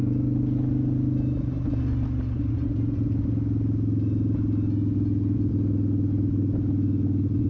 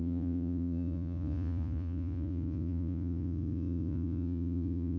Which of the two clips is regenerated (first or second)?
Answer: second